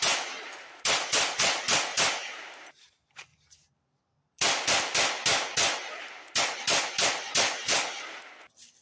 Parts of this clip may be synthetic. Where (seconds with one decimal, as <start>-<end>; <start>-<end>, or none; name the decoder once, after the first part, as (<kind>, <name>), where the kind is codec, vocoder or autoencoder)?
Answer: none